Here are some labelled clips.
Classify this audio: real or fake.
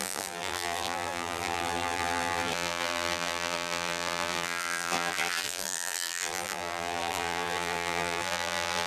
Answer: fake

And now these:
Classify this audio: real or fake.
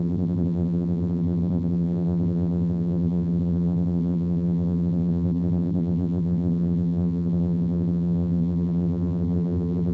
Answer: fake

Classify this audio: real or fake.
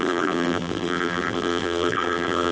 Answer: fake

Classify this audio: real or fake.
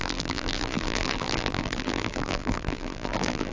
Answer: fake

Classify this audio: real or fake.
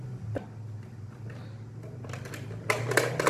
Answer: real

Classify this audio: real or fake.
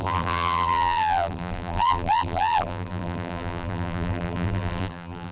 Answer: fake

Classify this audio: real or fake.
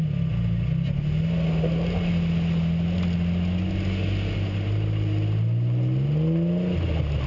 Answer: real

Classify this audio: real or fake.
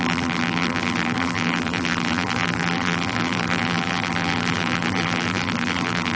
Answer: fake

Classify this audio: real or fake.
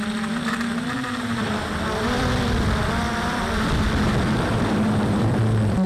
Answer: fake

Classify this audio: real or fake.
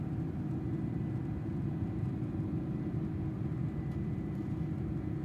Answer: fake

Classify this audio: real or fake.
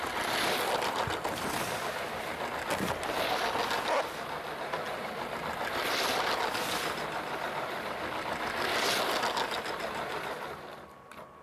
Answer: real